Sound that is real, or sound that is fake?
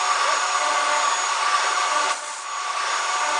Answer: real